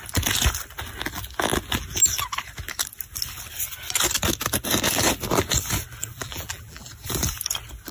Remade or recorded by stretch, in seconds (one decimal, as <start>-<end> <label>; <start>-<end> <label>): 0.0-6.0 recorded; 6.0-6.9 remade; 6.9-7.9 recorded